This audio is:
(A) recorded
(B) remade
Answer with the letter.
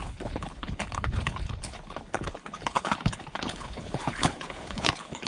B